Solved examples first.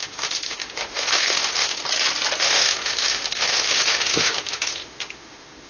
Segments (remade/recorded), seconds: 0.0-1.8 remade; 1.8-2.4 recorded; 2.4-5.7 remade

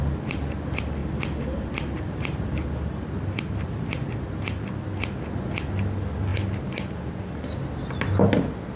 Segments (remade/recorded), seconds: 0.0-1.0 recorded; 1.0-2.0 remade; 2.0-8.8 recorded

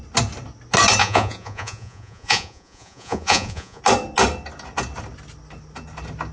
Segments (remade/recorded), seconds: 0.0-1.0 recorded; 1.0-3.8 remade; 3.8-6.3 recorded

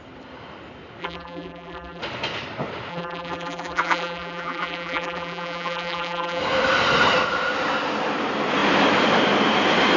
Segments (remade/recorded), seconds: 0.0-1.0 recorded; 1.0-2.0 remade; 2.0-2.9 recorded; 2.9-6.4 remade; 6.4-10.0 recorded

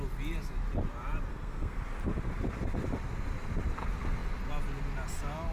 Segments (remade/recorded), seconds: 0.0-1.3 recorded; 1.3-1.8 remade; 1.8-5.5 recorded

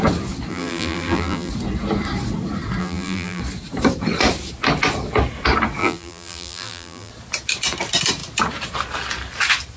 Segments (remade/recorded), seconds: 0.0-0.5 recorded; 0.5-1.5 remade; 1.5-2.8 recorded; 2.8-3.4 remade; 3.4-5.8 recorded; 5.8-7.1 remade; 7.1-9.8 recorded